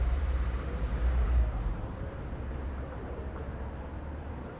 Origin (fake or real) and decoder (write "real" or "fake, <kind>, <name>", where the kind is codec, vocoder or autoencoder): fake, vocoder, BigVGAN v2